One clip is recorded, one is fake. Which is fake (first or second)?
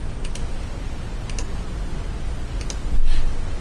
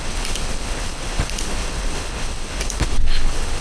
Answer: second